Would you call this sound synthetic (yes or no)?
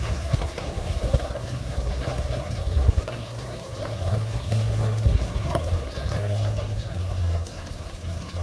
yes